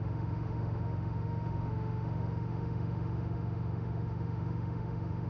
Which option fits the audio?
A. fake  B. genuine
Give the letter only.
A